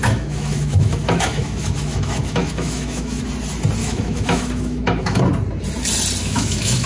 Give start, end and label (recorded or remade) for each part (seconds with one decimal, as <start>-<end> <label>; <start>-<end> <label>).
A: 0.0-3.2 remade; 3.2-3.8 recorded; 3.8-5.2 remade; 5.2-6.2 recorded; 6.2-6.9 remade